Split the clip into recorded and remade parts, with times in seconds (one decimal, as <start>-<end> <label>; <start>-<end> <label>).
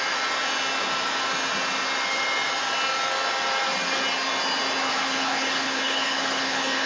0.0-4.9 recorded; 4.9-6.9 remade